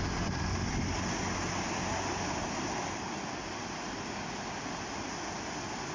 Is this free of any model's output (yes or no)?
yes